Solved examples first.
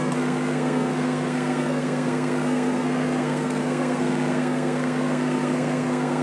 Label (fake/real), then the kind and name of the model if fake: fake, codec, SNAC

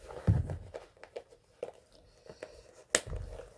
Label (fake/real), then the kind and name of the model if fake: real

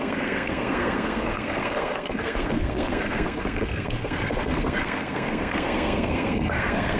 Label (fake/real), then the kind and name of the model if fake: fake, codec, SNAC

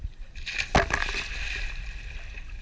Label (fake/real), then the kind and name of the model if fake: real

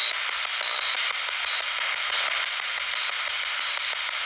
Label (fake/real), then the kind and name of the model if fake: real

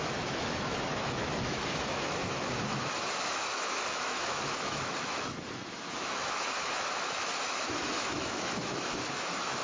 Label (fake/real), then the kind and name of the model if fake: fake, autoencoder, DAC-VAE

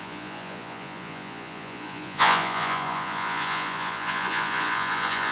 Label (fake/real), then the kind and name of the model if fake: fake, vocoder, Vocos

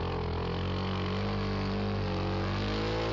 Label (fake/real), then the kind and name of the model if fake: real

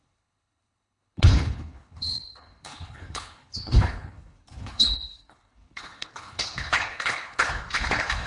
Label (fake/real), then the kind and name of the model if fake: fake, codec, HILCodec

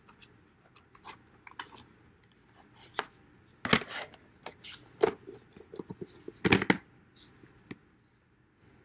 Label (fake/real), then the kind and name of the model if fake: real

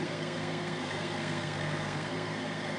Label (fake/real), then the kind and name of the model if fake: fake, codec, SNAC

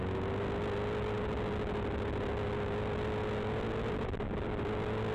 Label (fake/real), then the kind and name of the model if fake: real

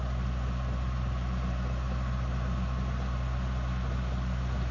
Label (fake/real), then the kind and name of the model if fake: real